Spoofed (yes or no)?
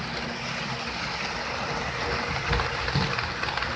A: no